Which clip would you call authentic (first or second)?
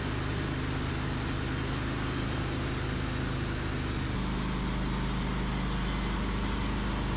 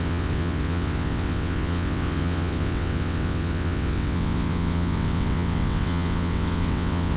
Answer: first